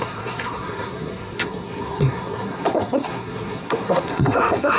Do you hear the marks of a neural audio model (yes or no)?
yes